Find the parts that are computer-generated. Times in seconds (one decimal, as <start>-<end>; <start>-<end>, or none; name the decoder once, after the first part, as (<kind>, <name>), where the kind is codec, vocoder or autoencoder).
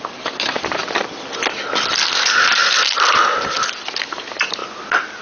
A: 0.0-0.8 (vocoder, BigVGAN v2); 3.9-4.6